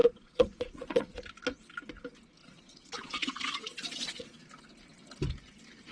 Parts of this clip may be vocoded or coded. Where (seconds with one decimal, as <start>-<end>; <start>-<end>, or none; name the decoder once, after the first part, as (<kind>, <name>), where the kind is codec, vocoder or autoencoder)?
0.0-1.2 (vocoder, Vocos); 2.4-4.5